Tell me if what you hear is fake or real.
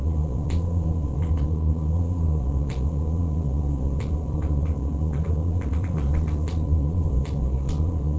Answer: fake